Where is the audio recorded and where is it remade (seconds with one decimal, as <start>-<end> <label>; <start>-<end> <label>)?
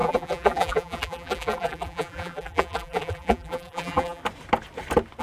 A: 0.0-4.2 remade; 4.2-5.2 recorded